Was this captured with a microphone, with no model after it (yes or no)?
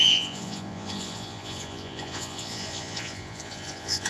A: no